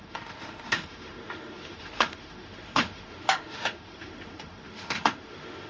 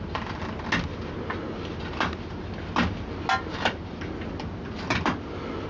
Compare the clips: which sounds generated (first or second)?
first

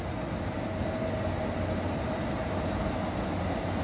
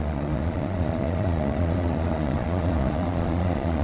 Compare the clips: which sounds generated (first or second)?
second